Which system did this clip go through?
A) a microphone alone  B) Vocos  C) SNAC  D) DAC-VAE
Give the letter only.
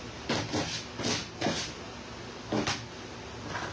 A